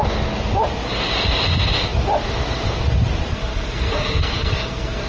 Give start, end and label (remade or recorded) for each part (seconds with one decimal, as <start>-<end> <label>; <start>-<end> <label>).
0.0-3.3 recorded; 3.3-5.1 remade